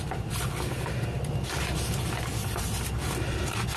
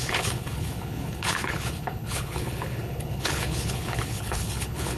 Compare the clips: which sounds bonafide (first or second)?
first